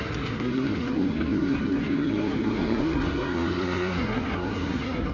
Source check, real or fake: fake